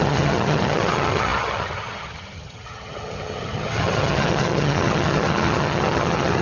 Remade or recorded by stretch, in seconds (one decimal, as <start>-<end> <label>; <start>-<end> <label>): 0.0-6.4 remade